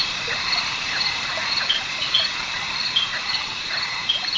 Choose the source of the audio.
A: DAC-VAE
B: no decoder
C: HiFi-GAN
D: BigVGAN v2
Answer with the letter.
B